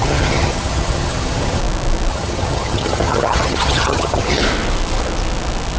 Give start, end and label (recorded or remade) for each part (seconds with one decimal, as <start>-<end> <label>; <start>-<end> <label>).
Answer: 0.0-1.6 remade; 1.6-2.1 recorded; 2.1-4.4 remade; 4.4-5.8 recorded